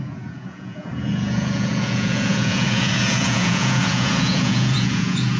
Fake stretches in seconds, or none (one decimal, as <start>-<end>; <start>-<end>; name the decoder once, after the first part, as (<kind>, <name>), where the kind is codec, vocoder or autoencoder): 0.0-5.4 (vocoder, Vocos)